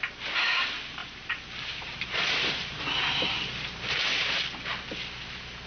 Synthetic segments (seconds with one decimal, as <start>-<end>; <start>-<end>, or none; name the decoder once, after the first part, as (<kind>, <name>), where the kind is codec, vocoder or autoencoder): 1.0-4.4 (vocoder, BigVGAN v2)